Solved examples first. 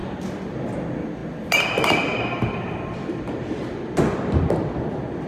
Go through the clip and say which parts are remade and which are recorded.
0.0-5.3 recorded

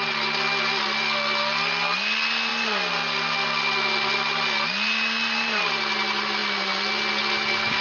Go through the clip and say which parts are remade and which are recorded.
0.0-7.8 recorded

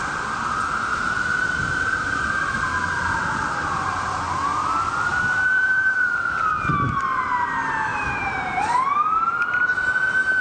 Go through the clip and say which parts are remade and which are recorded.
0.0-1.3 recorded; 1.3-4.2 remade; 4.2-5.1 recorded; 5.1-6.5 remade; 6.5-7.9 recorded; 7.9-8.6 remade; 8.6-10.4 recorded

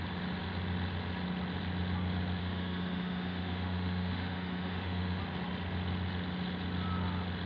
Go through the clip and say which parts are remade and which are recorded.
0.0-2.4 recorded; 2.4-5.2 remade; 5.2-7.5 recorded